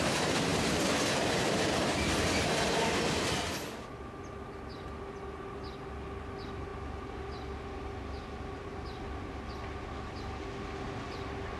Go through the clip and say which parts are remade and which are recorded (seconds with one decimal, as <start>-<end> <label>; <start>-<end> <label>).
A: 0.0-11.6 recorded